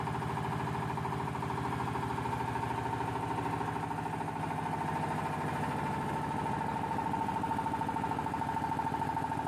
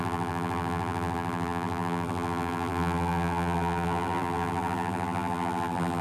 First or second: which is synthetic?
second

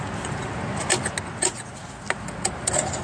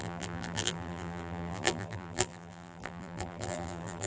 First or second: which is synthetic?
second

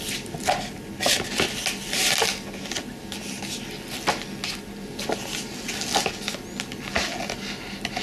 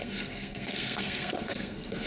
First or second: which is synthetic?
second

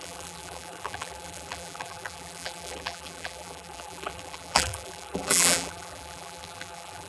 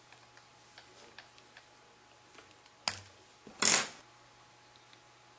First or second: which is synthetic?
first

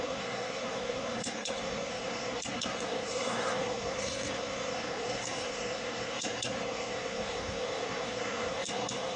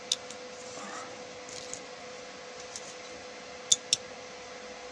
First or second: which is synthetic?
first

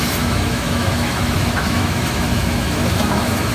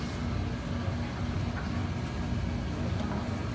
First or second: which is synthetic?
first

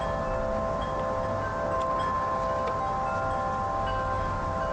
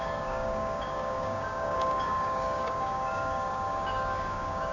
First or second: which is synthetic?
second